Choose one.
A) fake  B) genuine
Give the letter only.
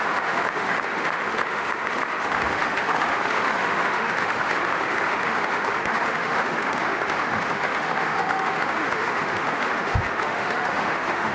A